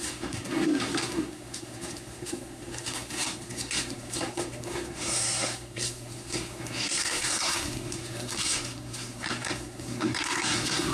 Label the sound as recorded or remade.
remade